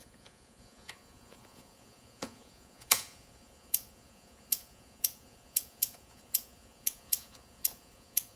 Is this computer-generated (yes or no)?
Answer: yes